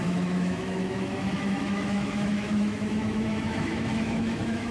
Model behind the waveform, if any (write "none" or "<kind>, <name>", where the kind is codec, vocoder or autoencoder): autoencoder, DAC-VAE